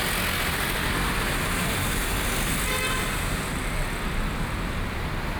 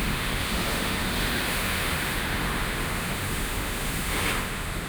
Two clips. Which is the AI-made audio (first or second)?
second